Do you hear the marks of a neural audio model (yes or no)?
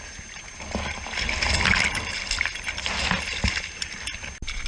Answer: no